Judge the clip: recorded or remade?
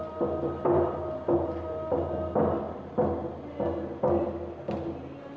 recorded